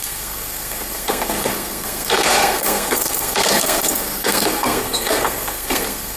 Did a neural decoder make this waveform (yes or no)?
yes